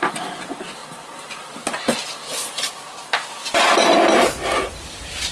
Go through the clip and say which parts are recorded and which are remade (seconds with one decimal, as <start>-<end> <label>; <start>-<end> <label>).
0.0-5.3 recorded